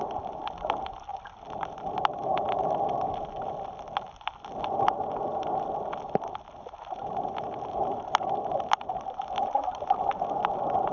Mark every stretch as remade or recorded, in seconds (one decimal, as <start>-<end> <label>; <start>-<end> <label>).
0.0-10.9 recorded